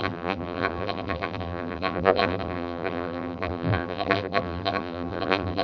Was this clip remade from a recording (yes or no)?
yes